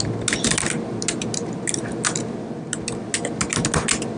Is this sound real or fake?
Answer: real